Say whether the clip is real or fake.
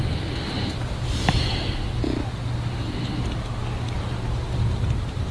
real